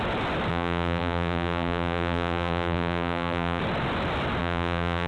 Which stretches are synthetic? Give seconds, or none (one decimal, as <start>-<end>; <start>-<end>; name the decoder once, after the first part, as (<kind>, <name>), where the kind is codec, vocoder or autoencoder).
0.5-3.6 (vocoder, BigVGAN v2); 4.4-5.1